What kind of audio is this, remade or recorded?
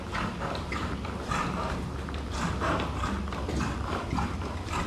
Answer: remade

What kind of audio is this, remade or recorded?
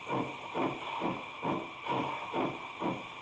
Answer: recorded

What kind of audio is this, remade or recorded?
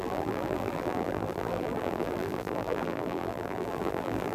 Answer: remade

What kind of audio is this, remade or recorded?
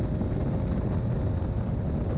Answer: recorded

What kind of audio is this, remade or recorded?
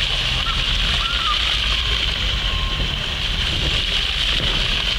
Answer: remade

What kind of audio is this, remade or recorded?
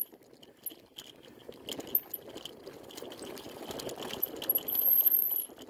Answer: recorded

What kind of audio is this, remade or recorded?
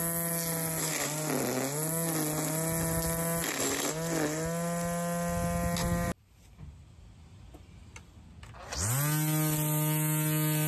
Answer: recorded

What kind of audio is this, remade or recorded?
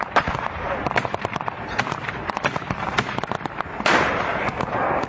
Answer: remade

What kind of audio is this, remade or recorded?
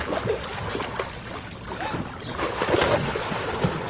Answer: recorded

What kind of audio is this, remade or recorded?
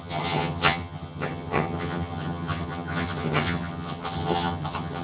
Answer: remade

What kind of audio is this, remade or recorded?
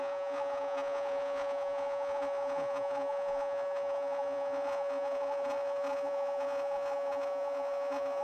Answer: remade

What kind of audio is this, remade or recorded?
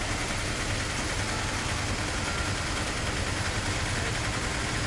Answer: recorded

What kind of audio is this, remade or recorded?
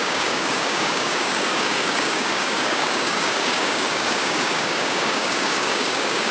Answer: remade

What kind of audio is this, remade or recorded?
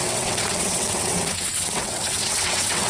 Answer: remade